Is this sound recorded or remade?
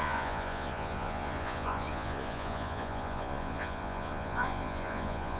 remade